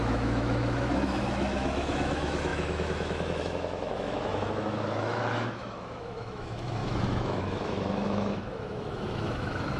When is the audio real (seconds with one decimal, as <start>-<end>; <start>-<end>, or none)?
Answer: none